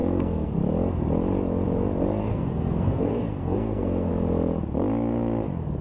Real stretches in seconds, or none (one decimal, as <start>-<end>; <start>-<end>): 0.5-2.3; 4.1-5.8